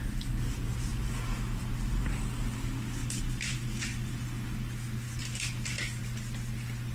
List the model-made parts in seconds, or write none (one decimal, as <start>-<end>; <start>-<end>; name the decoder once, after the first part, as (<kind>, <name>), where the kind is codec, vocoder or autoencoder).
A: 0.9-1.6 (vocoder, BigVGAN v2); 3.0-4.1; 5.2-6.0